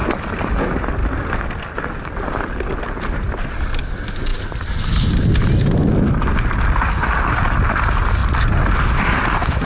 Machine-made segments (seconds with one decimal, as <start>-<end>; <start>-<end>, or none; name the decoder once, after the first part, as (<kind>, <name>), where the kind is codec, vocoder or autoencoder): none